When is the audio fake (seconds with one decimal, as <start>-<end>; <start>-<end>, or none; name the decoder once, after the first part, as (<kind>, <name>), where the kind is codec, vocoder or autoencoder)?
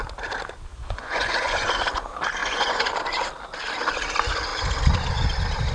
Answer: 0.7-1.7 (vocoder, Vocos); 2.4-2.9